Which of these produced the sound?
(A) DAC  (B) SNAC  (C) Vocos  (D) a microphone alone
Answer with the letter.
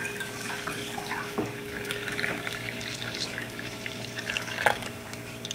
A